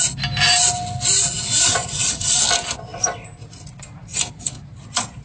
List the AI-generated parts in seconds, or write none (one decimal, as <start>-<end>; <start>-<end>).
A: 1.8-2.4